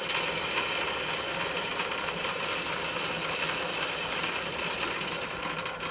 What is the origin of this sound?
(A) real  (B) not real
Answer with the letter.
B